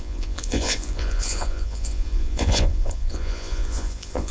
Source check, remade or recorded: remade